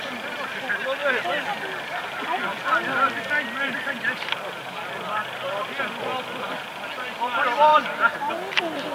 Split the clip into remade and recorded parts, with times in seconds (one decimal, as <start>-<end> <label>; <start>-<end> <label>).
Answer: 0.0-7.7 recorded; 7.7-8.3 remade; 8.3-8.9 recorded